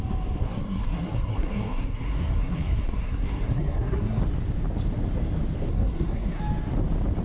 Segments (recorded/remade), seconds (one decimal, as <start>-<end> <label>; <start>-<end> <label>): 0.0-0.4 recorded; 0.4-4.2 remade; 4.2-5.7 recorded; 5.7-6.4 remade; 6.4-7.2 recorded